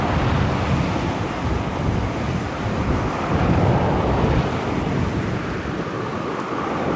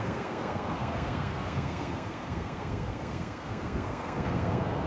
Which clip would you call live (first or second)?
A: first